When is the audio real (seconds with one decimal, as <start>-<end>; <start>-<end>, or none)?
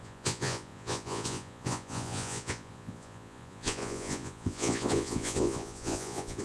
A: none